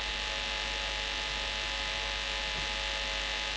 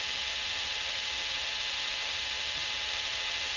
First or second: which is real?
first